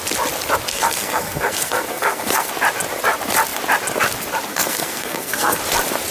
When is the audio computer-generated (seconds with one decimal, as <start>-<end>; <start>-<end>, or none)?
0.7-2.5; 4.5-5.6